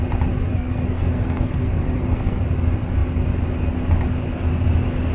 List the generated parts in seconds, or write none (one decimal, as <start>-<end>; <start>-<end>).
0.5-2.4